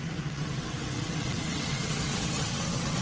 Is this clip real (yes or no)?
no